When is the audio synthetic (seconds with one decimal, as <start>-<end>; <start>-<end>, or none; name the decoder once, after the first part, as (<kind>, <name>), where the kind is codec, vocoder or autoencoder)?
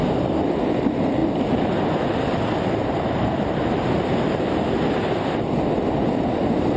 none